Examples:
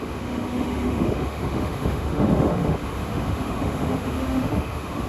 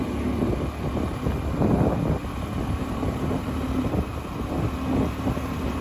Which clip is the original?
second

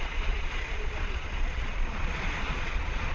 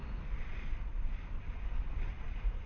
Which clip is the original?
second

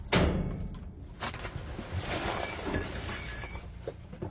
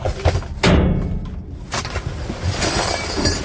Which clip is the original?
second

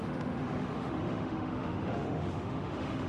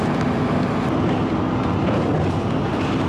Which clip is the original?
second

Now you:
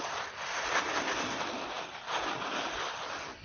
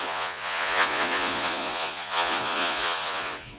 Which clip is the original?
first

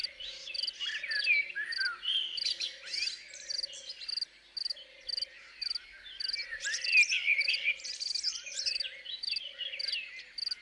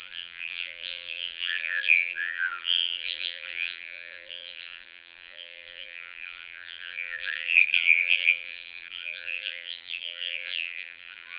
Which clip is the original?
first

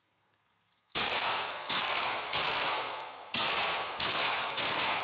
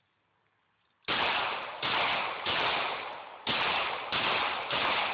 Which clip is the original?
second